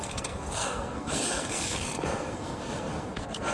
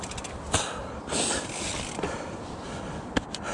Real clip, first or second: second